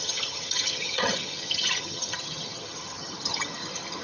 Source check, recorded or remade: remade